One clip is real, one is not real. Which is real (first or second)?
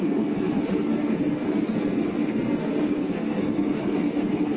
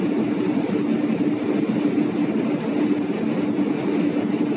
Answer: second